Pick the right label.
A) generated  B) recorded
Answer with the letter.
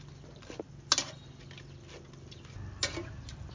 B